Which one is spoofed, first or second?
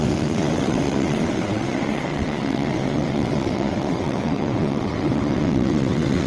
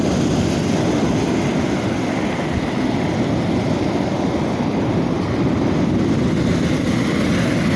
first